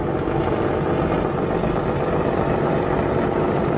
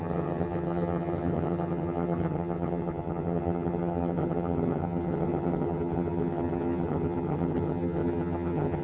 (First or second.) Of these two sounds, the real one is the first